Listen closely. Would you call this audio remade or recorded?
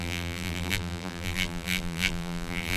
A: remade